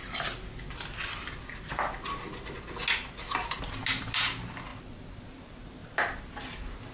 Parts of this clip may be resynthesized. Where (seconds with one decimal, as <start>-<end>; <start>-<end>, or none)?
5.8-6.5